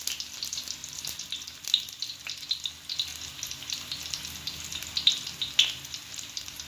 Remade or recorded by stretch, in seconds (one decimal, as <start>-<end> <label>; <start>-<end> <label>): 0.0-6.7 recorded